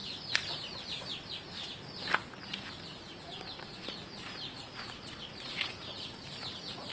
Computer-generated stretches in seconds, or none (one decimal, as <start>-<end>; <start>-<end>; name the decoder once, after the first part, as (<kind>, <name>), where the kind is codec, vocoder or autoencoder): 2.9-6.2 (vocoder, Vocos)